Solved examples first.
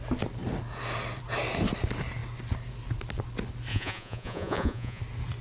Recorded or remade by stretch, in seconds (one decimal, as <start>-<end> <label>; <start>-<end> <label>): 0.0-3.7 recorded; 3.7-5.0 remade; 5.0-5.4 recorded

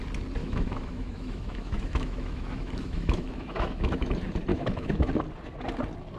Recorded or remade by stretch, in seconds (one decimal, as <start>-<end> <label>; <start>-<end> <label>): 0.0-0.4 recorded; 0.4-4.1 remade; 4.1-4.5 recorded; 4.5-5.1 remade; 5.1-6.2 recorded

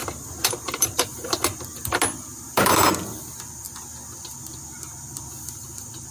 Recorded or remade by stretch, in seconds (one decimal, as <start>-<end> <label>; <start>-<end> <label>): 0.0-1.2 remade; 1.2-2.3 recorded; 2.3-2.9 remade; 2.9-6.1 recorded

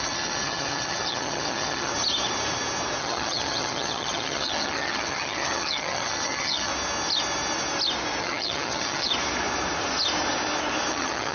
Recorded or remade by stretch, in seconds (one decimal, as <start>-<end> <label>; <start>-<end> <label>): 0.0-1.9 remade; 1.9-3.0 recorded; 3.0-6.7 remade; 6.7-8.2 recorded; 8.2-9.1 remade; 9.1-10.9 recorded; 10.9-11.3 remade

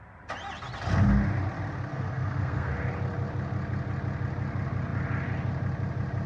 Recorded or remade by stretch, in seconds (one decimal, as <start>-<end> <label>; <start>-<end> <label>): 0.0-1.9 recorded; 1.9-2.7 remade; 2.7-6.3 recorded

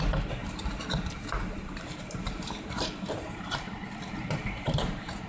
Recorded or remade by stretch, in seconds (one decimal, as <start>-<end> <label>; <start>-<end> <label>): 0.0-0.4 remade; 0.4-1.6 recorded; 1.6-5.3 remade

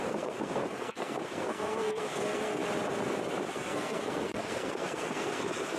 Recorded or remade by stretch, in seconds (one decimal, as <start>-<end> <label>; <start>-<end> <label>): 0.0-2.6 remade; 2.6-3.5 recorded; 3.5-5.8 remade